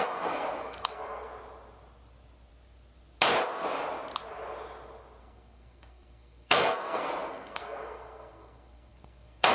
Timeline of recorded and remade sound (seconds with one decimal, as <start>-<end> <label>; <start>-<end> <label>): 0.0-1.3 remade; 1.3-5.2 recorded; 5.2-9.5 remade